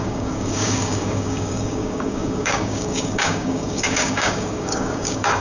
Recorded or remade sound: remade